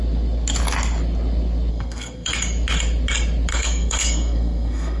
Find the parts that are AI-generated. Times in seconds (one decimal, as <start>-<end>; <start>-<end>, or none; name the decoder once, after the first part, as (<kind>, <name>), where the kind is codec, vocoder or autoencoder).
1.7-2.3 (codec, SNAC); 3.5-5.0